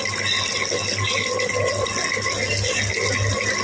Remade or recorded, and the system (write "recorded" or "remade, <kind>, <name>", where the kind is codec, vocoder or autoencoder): recorded